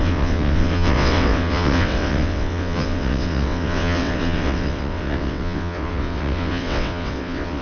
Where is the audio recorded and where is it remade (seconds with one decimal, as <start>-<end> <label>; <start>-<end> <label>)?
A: 0.0-7.6 remade